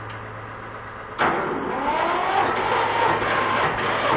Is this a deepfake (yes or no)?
no